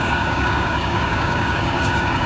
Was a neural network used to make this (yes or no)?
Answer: yes